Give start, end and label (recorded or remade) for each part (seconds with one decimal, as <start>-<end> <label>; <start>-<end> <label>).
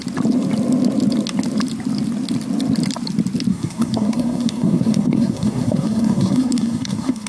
0.0-3.5 recorded; 3.5-7.3 remade